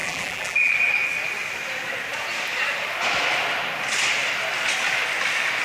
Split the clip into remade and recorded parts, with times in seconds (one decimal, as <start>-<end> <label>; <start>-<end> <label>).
0.0-0.7 remade; 0.7-5.6 recorded